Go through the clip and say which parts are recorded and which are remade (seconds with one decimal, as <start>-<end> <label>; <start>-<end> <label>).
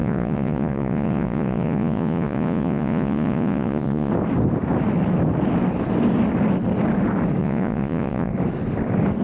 0.0-4.1 remade; 4.1-7.4 recorded; 7.4-8.3 remade; 8.3-9.2 recorded